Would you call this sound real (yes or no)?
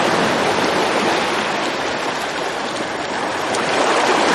yes